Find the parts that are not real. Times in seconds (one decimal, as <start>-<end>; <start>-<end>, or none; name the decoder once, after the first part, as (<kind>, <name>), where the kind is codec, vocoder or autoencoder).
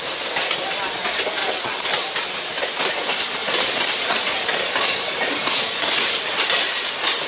none